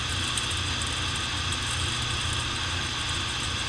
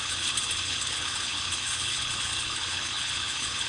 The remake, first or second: second